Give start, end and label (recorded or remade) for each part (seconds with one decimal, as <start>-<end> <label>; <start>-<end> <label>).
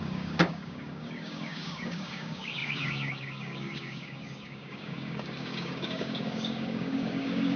0.0-7.6 remade